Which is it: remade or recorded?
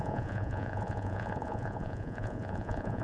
remade